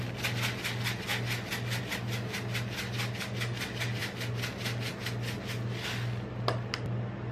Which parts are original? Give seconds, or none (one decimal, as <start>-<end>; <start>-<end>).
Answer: 0.0-7.3